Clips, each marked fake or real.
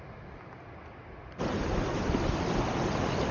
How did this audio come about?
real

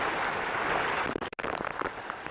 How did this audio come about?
real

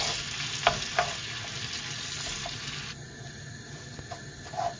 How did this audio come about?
real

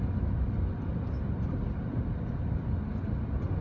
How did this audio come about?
real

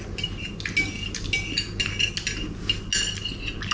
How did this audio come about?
real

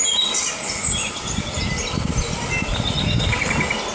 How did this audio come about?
real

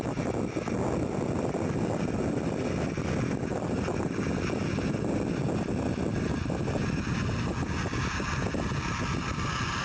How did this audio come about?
real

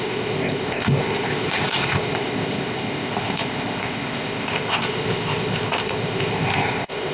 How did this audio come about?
fake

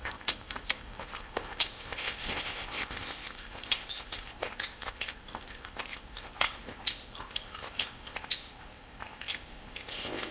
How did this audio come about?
fake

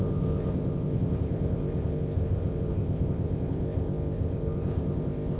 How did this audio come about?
fake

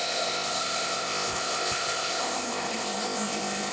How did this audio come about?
fake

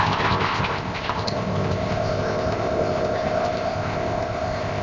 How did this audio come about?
fake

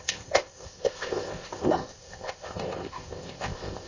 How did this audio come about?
fake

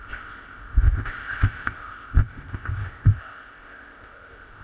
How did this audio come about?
fake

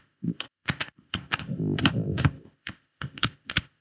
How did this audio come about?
fake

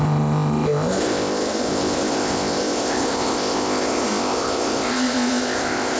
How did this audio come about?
fake